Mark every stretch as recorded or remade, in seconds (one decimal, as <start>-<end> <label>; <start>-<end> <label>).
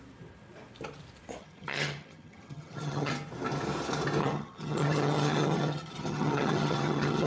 0.0-1.4 recorded; 1.4-3.1 remade; 3.1-4.2 recorded; 4.2-7.3 remade